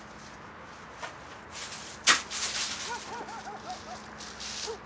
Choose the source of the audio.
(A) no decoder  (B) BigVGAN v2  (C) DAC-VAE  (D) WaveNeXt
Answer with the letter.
A